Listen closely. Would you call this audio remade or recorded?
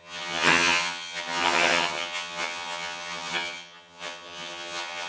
remade